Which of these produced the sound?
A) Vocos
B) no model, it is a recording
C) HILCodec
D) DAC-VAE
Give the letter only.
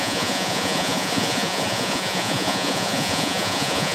A